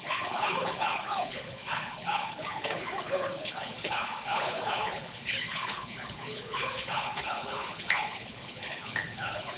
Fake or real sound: fake